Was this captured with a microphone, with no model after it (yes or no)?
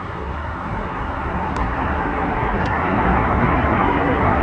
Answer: no